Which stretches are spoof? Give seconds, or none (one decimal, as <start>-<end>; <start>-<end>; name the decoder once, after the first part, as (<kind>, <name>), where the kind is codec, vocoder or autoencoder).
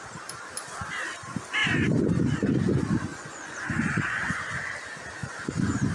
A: 3.1-4.7 (vocoder, Vocos); 5.2-5.9